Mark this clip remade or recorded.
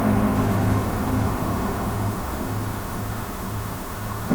remade